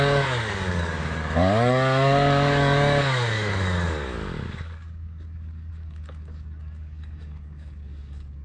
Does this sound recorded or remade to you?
remade